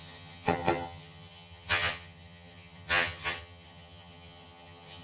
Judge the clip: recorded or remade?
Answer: remade